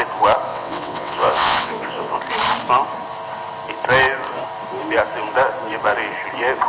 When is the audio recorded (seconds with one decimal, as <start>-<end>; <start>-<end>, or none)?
0.0-0.5; 2.2-6.7

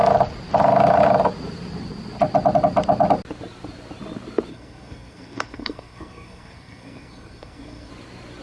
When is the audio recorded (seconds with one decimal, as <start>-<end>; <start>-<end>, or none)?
0.0-4.5; 7.9-8.4

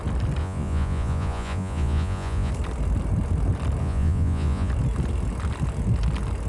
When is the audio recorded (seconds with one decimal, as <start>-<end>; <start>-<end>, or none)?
0.0-0.4; 2.5-3.8; 4.7-6.5